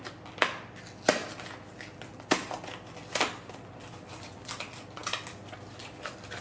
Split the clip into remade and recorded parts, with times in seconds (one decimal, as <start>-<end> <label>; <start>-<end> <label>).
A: 0.0-6.4 recorded